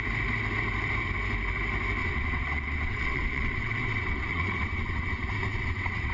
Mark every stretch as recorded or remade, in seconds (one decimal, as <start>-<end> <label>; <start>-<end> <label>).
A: 0.0-2.0 recorded; 2.0-6.1 remade